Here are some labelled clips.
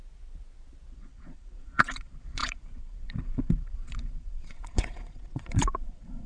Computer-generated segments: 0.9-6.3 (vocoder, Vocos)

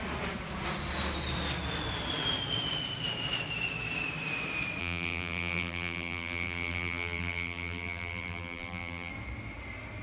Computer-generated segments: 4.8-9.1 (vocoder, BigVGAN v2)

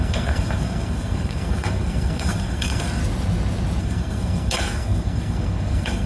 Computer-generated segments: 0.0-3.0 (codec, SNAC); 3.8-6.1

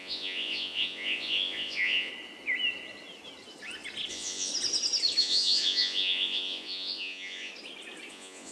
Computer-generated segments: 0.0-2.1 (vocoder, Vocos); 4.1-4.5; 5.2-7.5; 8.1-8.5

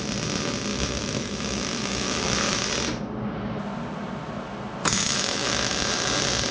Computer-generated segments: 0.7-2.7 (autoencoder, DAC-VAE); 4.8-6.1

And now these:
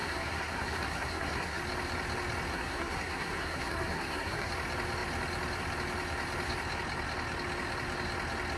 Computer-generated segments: 0.0-1.6 (codec, SNAC); 2.5-4.5

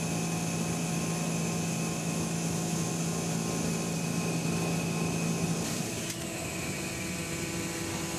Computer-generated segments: 2.0-2.9 (autoencoder, DAC-VAE)